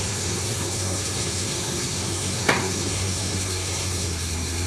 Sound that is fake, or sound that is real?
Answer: fake